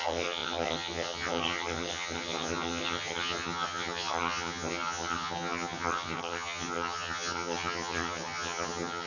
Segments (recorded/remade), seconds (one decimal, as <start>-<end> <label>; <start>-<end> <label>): 0.0-9.1 remade